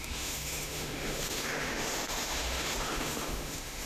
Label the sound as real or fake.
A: fake